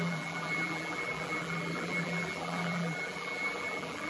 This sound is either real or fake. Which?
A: fake